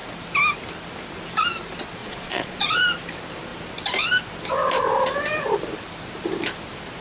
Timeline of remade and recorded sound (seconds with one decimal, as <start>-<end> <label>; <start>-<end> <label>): 0.0-2.0 recorded; 2.0-2.8 remade; 2.8-7.0 recorded